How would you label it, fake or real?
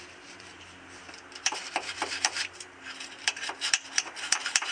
fake